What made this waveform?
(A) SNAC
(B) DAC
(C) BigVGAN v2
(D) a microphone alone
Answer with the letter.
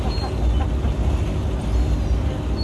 D